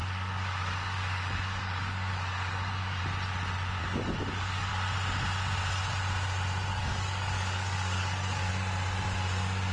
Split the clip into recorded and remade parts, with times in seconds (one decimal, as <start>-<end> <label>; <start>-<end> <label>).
0.0-3.0 remade; 3.0-3.8 recorded; 3.8-4.7 remade; 4.7-6.7 recorded; 6.7-8.5 remade; 8.5-9.7 recorded